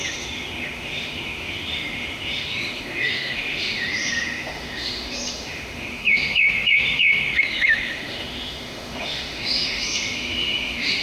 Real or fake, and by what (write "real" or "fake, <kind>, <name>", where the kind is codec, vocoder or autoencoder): fake, autoencoder, DAC-VAE